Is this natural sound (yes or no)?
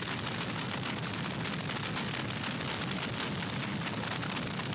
yes